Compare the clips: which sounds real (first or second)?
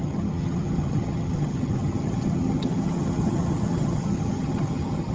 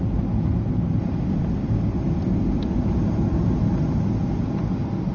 second